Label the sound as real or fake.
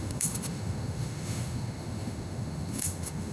fake